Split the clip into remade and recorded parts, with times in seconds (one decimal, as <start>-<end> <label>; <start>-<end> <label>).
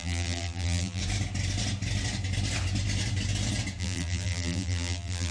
0.0-1.0 remade; 1.0-3.8 recorded; 3.8-5.3 remade